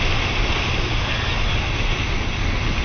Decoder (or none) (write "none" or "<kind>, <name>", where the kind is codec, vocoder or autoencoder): none